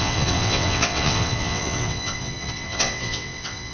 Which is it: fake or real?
fake